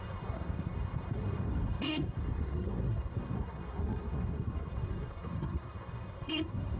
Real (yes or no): no